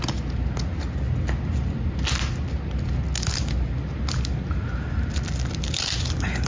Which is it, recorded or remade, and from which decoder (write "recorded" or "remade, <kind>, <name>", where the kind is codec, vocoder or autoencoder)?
recorded